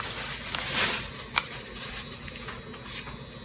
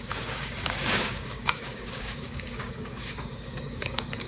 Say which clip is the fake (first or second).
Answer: second